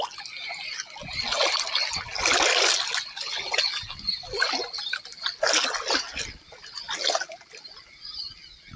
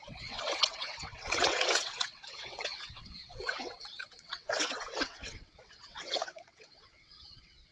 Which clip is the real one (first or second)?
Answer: first